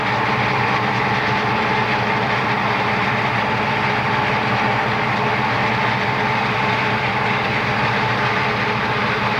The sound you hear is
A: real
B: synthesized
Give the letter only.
A